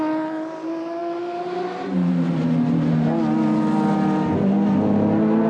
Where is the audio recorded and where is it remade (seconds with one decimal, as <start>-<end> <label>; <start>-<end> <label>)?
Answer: 0.0-5.5 recorded